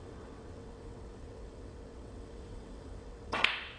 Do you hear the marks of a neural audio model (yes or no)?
yes